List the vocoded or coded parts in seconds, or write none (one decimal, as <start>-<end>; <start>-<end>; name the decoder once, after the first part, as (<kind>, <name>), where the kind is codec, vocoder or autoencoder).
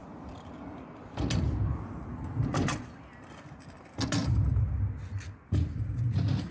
none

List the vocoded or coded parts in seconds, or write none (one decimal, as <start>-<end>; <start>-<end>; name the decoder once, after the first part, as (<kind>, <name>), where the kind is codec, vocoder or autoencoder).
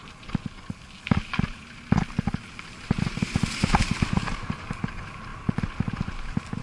none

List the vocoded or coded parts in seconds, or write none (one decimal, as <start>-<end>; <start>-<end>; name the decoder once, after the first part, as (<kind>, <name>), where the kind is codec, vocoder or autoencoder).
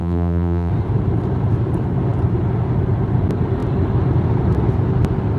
0.0-0.7 (vocoder, BigVGAN v2)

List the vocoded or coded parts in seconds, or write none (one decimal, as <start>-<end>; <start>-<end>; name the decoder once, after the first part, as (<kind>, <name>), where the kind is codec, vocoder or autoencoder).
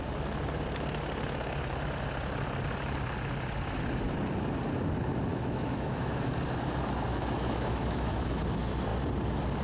5.3-6.3 (autoencoder, DAC-VAE); 7.1-8.4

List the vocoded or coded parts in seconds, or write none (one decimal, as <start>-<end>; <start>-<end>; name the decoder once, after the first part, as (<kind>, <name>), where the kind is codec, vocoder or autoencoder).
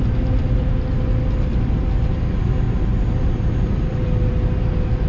2.9-4.3 (vocoder, BigVGAN v2)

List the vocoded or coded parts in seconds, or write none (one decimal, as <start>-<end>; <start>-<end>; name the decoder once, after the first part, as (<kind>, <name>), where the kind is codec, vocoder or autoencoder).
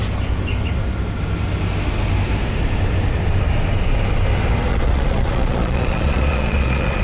4.7-7.0 (vocoder, Vocos)